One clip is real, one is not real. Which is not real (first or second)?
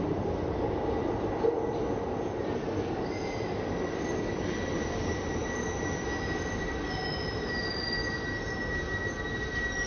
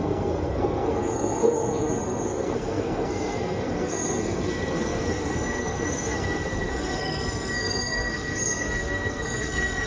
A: second